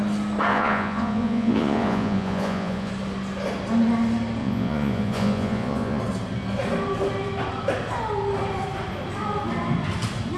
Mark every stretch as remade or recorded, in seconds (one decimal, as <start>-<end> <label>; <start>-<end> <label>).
0.0-0.5 recorded; 0.5-2.9 remade; 2.9-4.4 recorded; 4.4-6.0 remade; 6.0-10.4 recorded

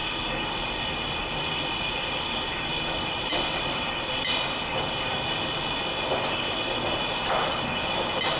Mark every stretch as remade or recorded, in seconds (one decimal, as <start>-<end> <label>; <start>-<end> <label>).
0.0-8.4 recorded

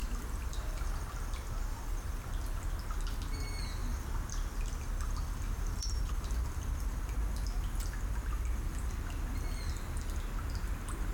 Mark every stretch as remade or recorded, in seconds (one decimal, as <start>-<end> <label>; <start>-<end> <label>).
0.0-2.3 remade; 2.3-3.8 recorded; 3.8-6.9 remade; 6.9-11.1 recorded

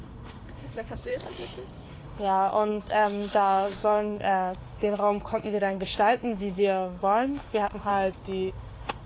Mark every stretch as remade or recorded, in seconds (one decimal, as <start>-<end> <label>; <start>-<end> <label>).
0.0-1.1 remade; 1.1-1.9 recorded; 1.9-7.9 remade; 7.9-8.5 recorded; 8.5-9.1 remade